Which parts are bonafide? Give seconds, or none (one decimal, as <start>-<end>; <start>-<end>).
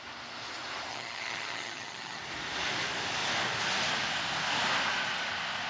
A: 0.0-0.9; 2.2-5.7